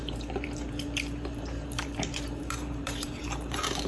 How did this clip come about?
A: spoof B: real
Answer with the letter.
A